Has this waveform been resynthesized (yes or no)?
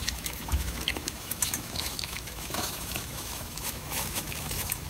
yes